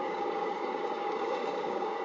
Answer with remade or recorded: remade